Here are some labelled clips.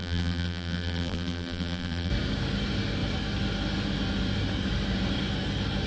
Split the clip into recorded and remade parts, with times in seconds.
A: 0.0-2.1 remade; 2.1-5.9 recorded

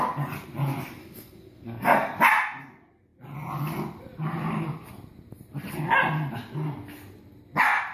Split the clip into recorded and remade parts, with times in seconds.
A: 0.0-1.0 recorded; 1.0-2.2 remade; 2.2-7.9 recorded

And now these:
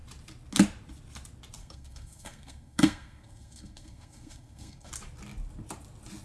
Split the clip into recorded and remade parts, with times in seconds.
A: 0.0-1.6 recorded; 1.6-4.9 remade; 4.9-6.2 recorded

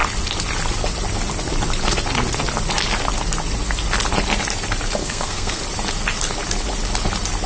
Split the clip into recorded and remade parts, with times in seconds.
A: 0.0-5.0 recorded; 5.0-5.6 remade; 5.6-7.5 recorded

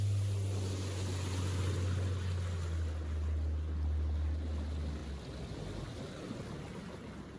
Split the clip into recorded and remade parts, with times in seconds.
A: 0.0-7.4 recorded

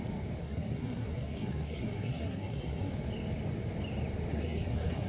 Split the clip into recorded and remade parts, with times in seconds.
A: 0.0-0.4 recorded; 0.4-2.9 remade; 2.9-4.3 recorded; 4.3-5.1 remade